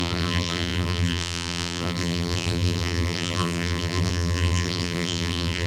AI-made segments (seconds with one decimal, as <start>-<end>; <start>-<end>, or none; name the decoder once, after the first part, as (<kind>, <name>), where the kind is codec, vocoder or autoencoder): 0.0-5.7 (vocoder, BigVGAN v2)